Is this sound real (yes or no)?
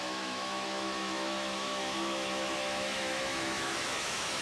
no